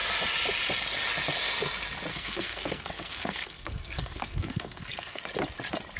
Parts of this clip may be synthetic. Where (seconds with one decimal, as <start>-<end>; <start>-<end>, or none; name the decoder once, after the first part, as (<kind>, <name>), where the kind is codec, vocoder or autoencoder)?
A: 2.1-5.2 (codec, SNAC)